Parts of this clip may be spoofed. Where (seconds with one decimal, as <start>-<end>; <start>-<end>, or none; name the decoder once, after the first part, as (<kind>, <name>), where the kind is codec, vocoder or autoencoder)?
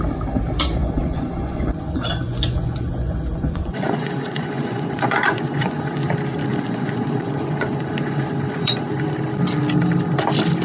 0.8-6.0 (vocoder, Vocos); 6.5-8.9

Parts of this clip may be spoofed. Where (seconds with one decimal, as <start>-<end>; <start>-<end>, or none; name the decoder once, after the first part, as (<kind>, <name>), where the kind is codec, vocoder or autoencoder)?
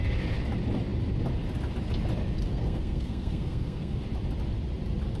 2.5-4.0 (codec, SNAC)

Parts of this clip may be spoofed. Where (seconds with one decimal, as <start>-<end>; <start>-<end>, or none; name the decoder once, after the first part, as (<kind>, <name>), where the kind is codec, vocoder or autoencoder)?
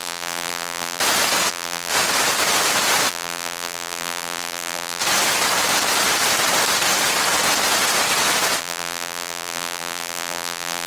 0.0-1.0 (vocoder, BigVGAN v2); 1.5-1.9; 3.1-5.0; 8.6-10.9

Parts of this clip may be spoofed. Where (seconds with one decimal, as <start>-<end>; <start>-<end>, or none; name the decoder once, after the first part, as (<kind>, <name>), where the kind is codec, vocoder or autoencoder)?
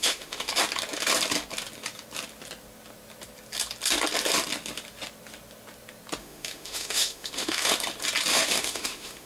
0.0-0.5 (autoencoder, DAC-VAE); 6.2-7.7; 8.3-9.3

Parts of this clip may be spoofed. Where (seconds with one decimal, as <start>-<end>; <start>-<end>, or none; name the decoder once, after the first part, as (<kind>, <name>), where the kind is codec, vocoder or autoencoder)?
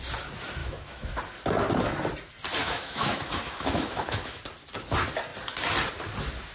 0.6-1.2 (autoencoder, DAC-VAE); 2.6-4.4